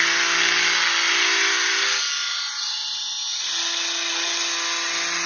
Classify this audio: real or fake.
real